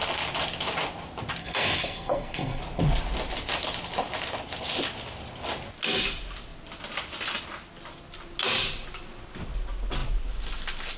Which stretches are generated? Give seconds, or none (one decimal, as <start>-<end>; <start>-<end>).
1.4-2.6